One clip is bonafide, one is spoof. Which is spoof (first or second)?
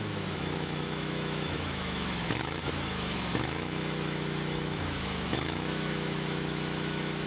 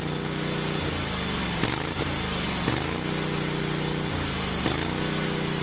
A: first